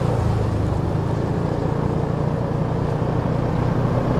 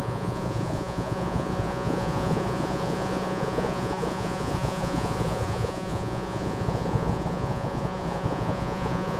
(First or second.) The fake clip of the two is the second